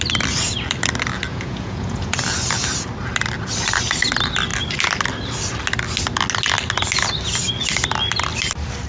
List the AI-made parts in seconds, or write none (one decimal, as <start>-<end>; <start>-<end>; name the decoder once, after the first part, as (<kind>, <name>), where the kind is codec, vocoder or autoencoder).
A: 1.3-2.1 (vocoder, Vocos)